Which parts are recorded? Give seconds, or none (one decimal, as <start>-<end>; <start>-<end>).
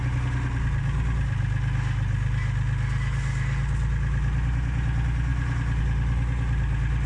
0.0-7.1